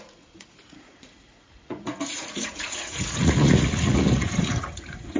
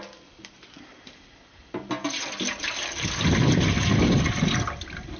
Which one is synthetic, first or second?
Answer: first